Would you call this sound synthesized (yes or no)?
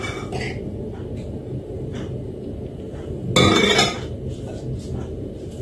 no